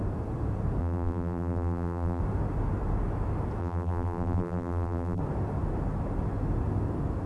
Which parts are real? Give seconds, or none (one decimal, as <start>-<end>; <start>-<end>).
0.0-0.8; 2.2-3.6; 5.2-7.3